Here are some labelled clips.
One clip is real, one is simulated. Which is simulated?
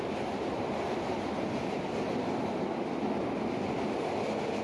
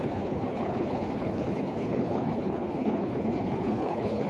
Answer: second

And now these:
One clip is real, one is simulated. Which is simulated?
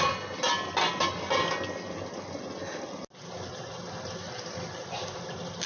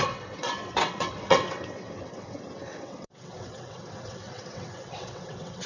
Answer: second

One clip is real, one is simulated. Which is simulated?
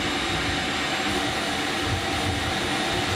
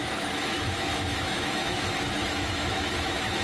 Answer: second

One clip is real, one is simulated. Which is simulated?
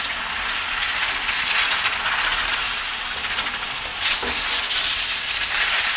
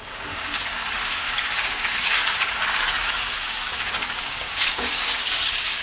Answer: second